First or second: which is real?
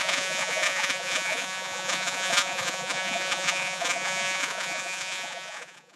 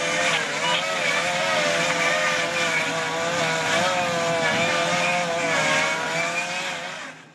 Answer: second